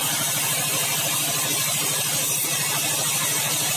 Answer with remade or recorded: recorded